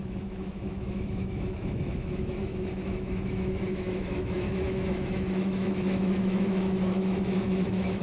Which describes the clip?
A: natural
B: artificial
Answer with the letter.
B